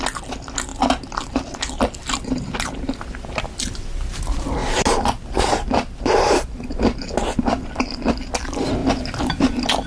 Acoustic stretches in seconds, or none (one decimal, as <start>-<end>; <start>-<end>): 0.0-9.9